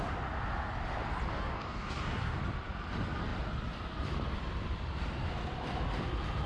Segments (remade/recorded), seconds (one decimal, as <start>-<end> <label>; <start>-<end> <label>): 0.0-1.3 recorded; 1.3-2.4 remade; 2.4-6.5 recorded